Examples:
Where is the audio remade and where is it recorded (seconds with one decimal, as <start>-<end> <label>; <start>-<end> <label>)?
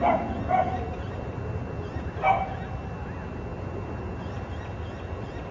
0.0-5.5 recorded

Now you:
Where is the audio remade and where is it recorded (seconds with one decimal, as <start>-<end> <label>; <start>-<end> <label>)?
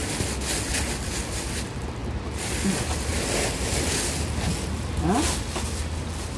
0.0-0.7 recorded; 0.7-2.0 remade; 2.0-2.7 recorded; 2.7-3.1 remade; 3.1-6.4 recorded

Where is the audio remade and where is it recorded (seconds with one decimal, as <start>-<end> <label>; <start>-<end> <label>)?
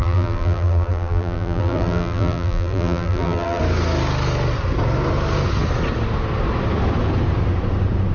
0.0-3.6 remade; 3.6-8.1 recorded